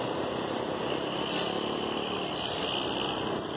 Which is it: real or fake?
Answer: real